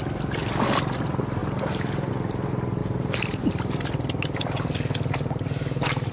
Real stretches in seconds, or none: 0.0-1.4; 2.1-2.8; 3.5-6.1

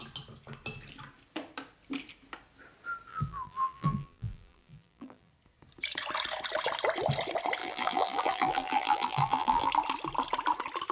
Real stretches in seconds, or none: 0.0-3.1; 5.3-7.6; 9.7-10.9

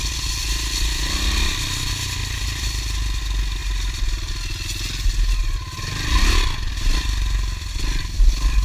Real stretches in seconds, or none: 0.0-2.2; 2.7-3.6; 4.3-8.6

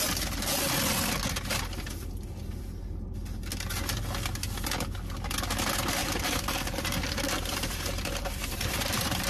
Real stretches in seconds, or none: 0.0-6.0

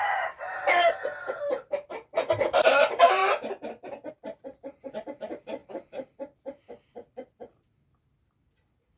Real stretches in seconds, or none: 3.2-4.1; 5.6-9.0